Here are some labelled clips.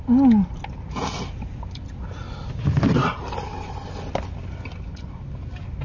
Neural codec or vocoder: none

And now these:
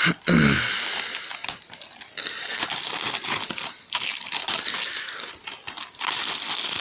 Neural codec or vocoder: none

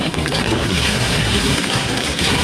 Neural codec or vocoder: codec, SNAC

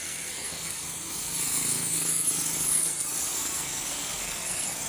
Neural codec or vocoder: codec, SNAC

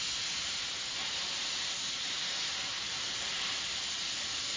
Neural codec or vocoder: none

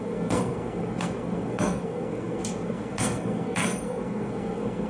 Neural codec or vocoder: codec, SNAC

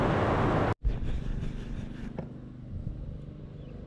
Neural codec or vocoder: none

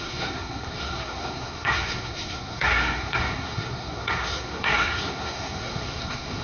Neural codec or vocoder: codec, SNAC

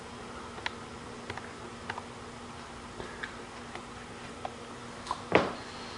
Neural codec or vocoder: none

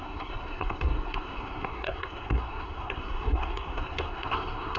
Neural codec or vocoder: codec, SNAC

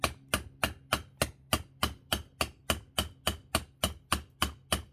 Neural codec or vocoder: none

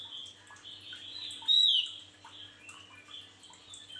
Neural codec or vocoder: none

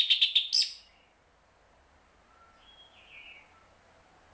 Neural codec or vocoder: none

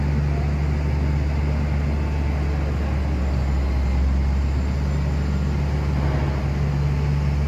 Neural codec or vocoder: none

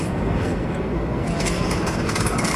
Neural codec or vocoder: codec, SNAC